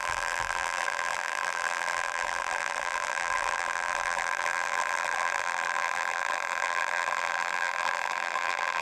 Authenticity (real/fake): fake